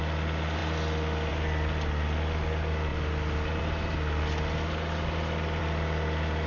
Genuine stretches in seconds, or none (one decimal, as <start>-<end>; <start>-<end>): 0.0-6.5